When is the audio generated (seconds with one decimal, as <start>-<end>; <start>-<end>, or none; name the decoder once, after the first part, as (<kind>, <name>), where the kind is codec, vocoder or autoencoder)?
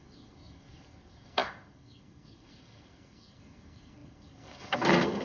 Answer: 0.0-5.2 (codec, SNAC)